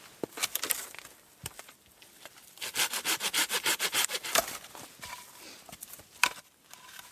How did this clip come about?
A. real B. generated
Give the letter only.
A